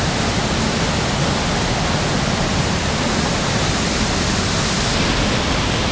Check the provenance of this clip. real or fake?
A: real